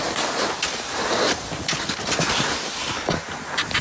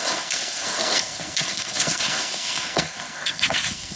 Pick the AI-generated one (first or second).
second